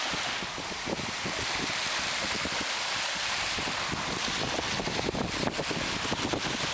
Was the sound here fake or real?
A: fake